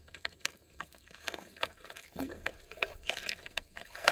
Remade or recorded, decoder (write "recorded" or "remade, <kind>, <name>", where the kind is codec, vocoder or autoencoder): remade, codec, SNAC